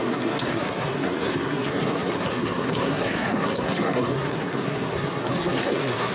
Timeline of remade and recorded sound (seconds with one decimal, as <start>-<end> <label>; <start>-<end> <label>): 0.0-6.1 remade